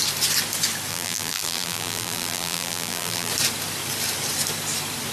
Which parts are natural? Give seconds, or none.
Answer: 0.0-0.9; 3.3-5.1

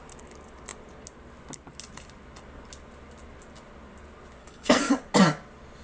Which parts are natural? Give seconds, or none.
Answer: 0.0-4.4; 4.9-5.8